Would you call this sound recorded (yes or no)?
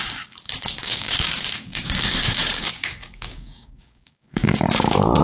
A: no